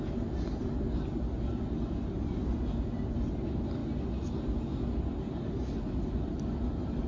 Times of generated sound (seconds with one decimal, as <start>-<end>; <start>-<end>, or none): none